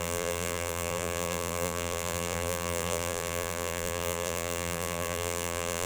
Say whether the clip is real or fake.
fake